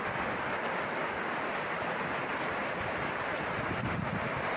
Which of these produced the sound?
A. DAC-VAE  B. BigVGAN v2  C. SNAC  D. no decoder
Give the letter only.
D